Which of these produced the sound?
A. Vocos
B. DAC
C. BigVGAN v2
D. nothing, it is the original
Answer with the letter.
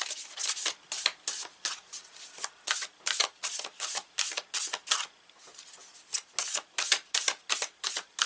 D